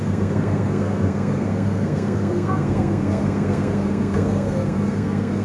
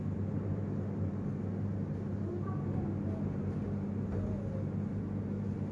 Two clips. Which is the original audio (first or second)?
second